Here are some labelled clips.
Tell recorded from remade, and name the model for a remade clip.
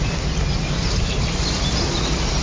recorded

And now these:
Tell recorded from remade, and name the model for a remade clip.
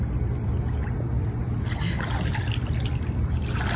recorded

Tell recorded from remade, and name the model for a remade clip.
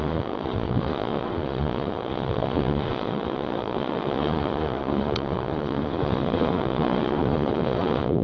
remade, vocoder, Vocos